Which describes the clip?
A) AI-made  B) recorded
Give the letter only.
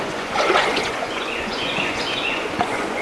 A